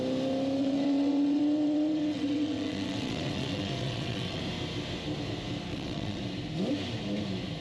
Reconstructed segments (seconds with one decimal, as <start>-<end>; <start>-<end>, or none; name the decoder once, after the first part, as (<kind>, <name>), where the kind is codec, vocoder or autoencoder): 0.6-4.4 (vocoder, WaveNeXt); 5.7-6.2